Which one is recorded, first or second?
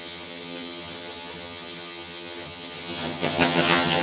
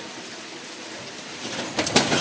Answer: second